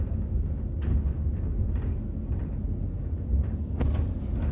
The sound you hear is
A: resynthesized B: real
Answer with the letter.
B